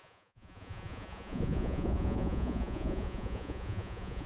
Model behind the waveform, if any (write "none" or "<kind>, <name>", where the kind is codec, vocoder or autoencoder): vocoder, Vocos